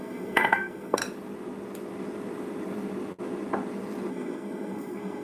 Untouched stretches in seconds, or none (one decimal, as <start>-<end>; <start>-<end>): 1.0-4.1